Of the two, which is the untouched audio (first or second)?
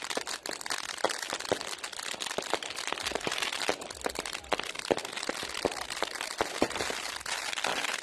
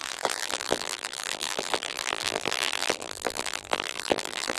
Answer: first